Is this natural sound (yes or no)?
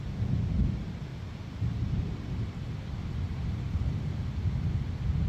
yes